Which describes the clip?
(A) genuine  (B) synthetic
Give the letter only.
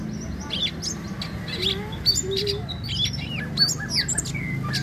A